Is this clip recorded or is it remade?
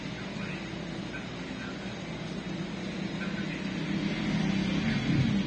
recorded